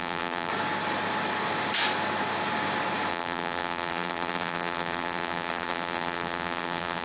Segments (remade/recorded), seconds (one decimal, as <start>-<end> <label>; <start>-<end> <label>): 0.0-0.5 remade; 0.5-3.1 recorded; 3.1-7.0 remade